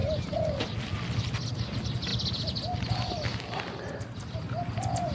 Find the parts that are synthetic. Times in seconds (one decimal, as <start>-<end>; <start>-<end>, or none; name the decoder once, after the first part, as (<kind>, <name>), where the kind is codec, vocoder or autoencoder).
0.0-0.5 (vocoder, BigVGAN v2)